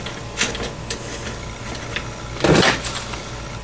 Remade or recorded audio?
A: recorded